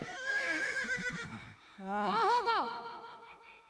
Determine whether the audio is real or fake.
fake